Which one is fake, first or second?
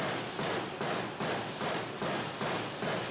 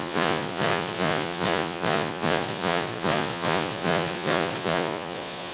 second